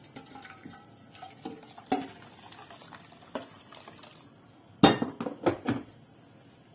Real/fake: real